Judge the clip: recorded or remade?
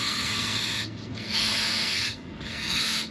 remade